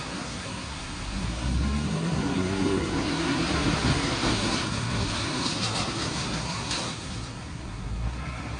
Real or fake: fake